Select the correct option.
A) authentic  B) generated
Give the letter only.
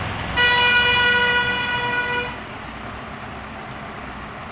A